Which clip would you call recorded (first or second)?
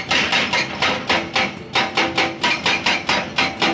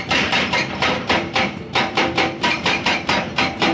first